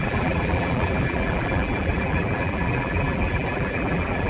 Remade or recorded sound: remade